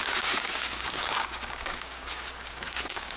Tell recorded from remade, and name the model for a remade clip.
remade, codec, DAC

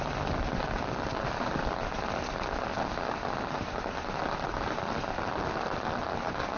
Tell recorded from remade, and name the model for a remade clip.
recorded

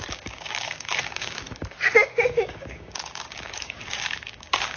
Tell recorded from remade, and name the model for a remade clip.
remade, codec, DAC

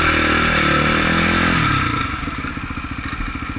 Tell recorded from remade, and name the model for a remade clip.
recorded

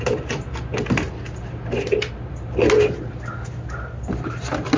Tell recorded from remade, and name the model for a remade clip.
recorded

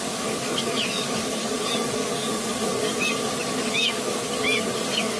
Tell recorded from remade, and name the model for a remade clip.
remade, codec, DAC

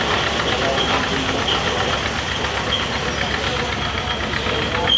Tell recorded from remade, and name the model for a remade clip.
recorded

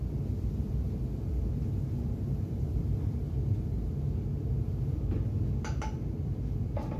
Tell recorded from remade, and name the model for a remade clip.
recorded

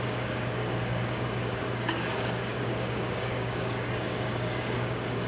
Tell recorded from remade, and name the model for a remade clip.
remade, codec, DAC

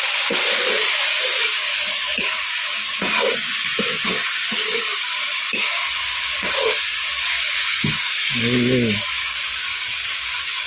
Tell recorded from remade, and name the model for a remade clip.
remade, codec, DAC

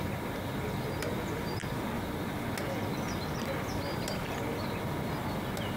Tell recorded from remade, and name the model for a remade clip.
recorded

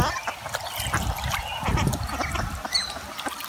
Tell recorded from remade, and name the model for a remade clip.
recorded